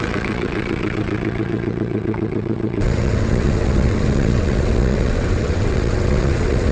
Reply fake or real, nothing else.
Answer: fake